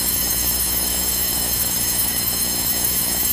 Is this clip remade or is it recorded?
remade